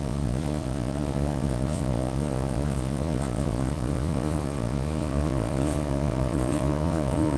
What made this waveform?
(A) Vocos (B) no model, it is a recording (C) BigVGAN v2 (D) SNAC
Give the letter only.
A